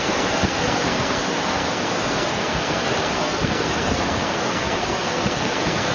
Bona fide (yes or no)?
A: no